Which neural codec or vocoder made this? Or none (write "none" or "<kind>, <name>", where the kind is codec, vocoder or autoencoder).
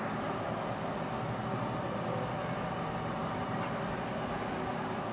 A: none